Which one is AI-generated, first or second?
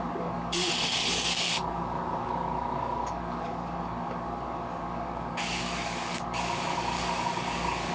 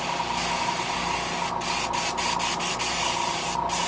first